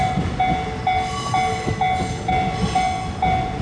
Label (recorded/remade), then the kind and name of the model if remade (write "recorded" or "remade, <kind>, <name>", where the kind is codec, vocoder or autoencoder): recorded